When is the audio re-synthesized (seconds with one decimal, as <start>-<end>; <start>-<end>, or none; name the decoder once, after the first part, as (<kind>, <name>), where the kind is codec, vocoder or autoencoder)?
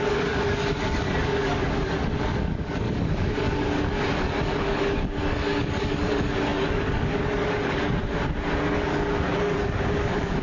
0.0-8.0 (codec, DAC); 8.6-10.4